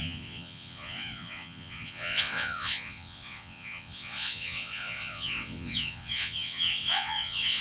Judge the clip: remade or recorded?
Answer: remade